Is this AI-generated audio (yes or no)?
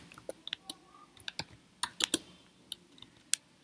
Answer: no